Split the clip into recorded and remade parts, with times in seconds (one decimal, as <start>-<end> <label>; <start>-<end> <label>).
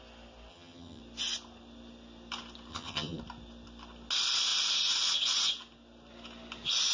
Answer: 0.0-0.5 recorded; 0.5-1.0 remade; 1.0-2.7 recorded; 2.7-3.2 remade; 3.2-6.9 recorded